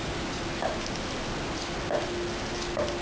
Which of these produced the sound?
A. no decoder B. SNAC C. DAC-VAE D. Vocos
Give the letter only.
A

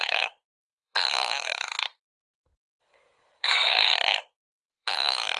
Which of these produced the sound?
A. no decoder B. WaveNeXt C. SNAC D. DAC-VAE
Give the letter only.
C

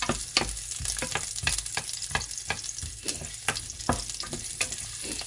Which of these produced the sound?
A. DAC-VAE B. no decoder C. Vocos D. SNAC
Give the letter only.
B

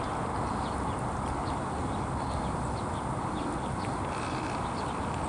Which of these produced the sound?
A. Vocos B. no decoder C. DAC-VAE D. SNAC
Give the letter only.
B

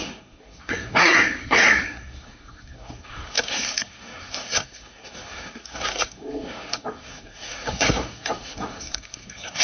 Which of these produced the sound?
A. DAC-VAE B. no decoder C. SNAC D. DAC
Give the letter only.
C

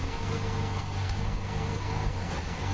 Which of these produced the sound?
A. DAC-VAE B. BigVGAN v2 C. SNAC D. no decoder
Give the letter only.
C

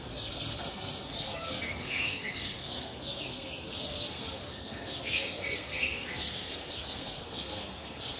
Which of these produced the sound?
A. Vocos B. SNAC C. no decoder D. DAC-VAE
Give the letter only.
B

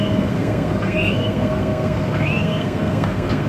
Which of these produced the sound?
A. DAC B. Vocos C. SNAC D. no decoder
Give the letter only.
C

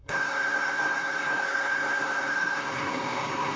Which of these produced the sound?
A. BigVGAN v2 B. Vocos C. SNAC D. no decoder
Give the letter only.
C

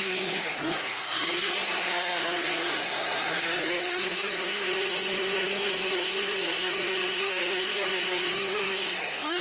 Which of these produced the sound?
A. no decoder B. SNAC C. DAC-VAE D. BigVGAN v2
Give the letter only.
B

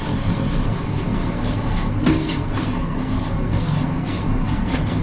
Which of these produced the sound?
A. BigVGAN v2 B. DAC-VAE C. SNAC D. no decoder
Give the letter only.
C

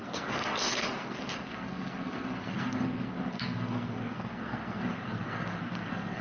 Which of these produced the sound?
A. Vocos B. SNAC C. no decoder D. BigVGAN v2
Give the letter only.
B